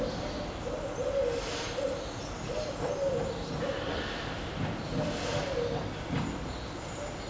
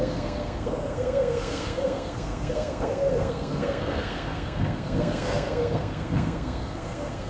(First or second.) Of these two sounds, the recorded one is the first